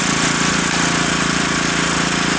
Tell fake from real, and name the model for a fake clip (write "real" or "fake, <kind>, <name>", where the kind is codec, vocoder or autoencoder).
real